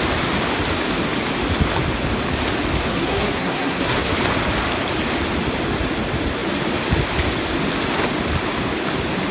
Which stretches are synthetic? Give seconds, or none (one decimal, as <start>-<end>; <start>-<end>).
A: 2.9-4.1